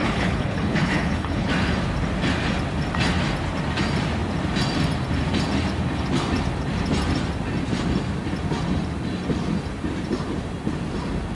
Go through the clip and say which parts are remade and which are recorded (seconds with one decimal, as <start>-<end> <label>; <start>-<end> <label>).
0.0-1.5 remade; 1.5-11.3 recorded